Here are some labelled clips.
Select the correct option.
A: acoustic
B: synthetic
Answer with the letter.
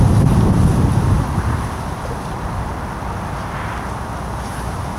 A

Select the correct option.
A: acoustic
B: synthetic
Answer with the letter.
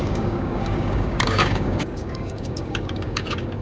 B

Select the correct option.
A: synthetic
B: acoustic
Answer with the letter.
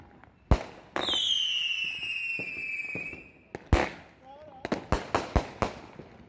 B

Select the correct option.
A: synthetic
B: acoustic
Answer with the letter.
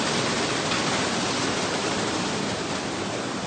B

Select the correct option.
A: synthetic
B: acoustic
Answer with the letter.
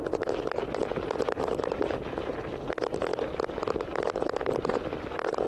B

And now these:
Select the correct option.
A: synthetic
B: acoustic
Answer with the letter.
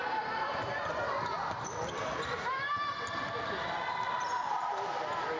B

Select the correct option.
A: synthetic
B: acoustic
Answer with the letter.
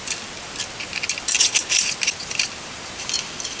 B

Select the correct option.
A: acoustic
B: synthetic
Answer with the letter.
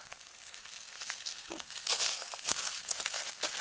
B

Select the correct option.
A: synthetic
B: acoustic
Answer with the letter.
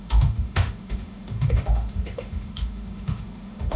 A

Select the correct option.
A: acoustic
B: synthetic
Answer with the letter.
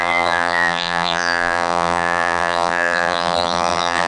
B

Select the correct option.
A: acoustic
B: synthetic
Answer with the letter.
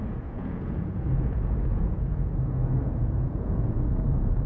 B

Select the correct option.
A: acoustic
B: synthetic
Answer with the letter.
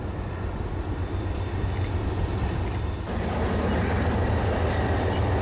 A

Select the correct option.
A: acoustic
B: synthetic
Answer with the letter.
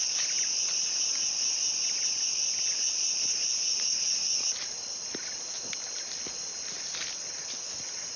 A